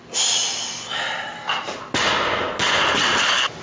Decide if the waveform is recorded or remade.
recorded